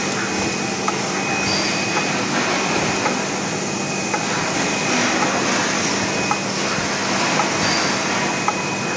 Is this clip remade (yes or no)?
no